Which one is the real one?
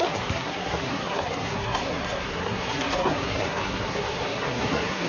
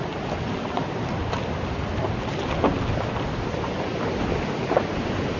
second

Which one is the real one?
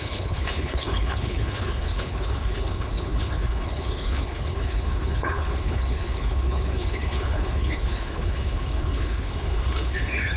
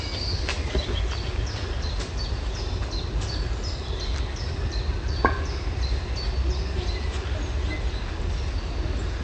second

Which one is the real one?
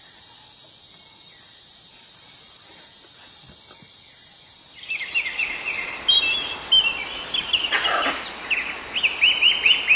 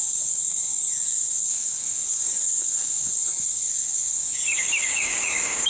first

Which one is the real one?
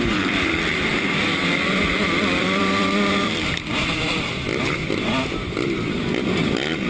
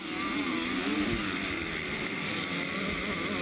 second